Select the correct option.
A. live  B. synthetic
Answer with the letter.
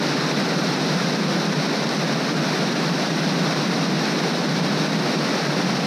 A